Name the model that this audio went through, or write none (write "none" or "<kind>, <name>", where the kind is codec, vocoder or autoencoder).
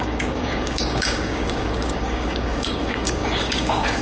codec, DAC